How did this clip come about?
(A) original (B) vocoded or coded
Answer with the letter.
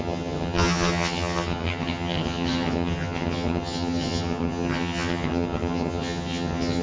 B